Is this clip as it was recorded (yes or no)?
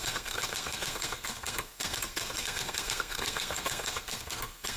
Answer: no